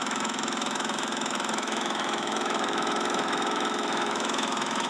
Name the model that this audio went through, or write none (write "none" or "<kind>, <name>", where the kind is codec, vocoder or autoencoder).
autoencoder, DAC-VAE